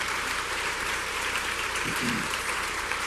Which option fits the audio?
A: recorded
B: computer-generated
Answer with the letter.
B